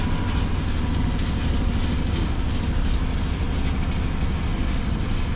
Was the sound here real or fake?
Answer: real